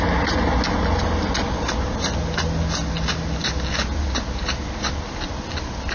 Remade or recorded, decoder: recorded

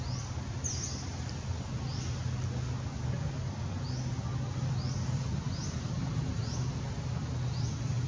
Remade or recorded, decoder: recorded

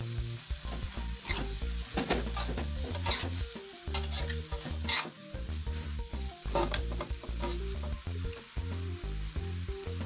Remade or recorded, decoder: recorded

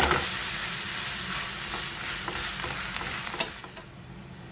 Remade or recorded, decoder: recorded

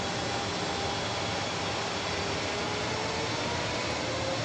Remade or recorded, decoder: recorded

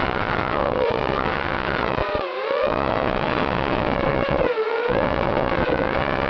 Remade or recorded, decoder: remade, vocoder, WaveNeXt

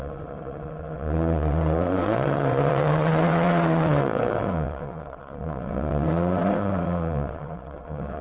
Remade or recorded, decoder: remade, vocoder, WaveNeXt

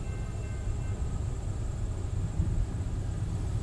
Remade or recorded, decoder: recorded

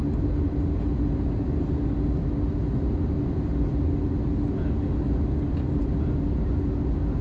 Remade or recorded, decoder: recorded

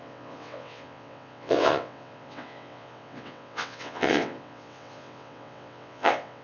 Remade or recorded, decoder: remade, vocoder, WaveNeXt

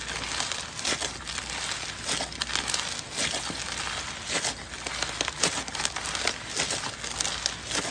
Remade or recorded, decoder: recorded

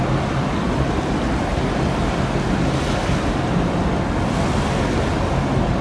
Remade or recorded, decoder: recorded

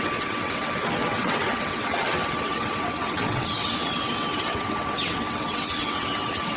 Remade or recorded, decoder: remade, vocoder, WaveNeXt